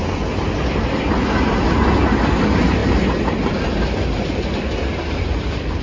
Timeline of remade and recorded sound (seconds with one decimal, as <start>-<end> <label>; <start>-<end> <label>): 0.0-5.8 recorded